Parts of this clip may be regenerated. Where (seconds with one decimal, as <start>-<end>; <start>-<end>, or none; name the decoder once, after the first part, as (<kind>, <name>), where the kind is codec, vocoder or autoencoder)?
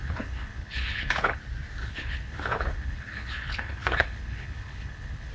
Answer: 0.0-1.4 (codec, HILCodec); 1.8-5.3